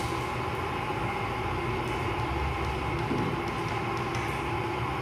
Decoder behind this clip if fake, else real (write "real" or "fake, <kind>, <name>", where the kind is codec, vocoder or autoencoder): real